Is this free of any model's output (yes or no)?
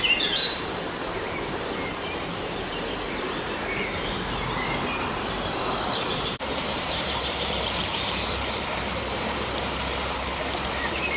no